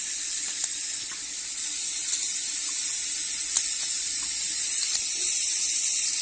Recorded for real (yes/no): yes